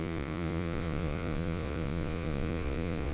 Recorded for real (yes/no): no